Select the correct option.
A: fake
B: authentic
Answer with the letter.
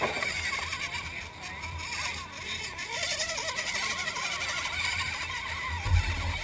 B